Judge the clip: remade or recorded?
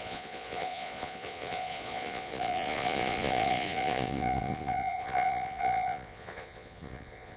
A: remade